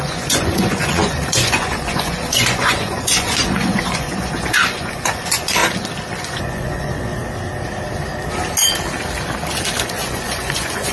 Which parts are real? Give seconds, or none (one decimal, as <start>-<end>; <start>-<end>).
5.6-6.2; 7.1-9.8